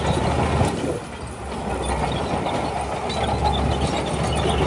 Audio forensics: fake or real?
real